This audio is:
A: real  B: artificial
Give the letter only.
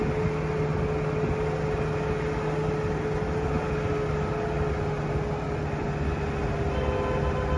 A